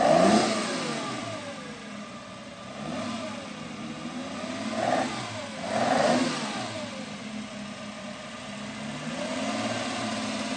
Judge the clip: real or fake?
real